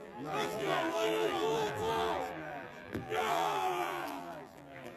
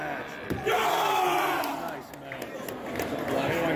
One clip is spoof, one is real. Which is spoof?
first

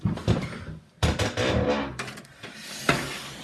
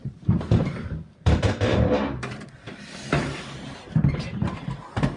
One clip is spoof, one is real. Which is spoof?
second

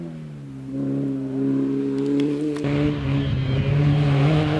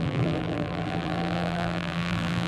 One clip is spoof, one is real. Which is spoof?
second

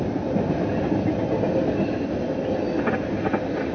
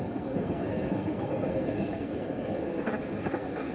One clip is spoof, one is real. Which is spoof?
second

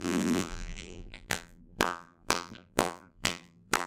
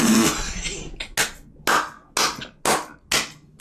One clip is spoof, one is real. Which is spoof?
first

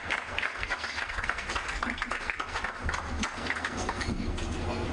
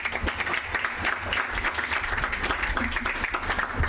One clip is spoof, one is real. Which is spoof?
first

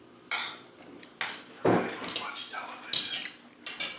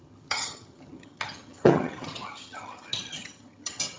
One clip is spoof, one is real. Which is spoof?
second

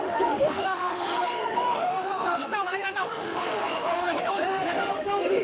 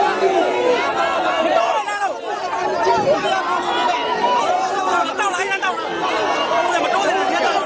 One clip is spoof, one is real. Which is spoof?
first